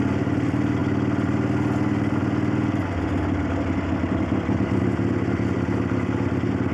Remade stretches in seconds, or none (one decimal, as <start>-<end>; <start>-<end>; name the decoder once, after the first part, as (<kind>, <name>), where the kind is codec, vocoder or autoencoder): none